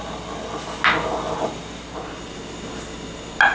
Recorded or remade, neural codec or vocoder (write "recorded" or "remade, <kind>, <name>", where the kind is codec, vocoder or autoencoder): recorded